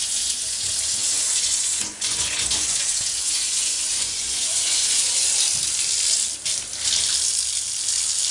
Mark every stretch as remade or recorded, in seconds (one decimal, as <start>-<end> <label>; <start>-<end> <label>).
0.0-5.2 remade; 5.2-8.3 recorded